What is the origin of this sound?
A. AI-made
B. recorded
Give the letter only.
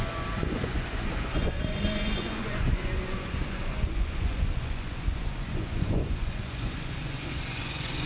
A